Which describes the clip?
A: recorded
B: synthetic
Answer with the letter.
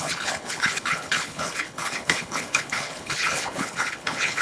B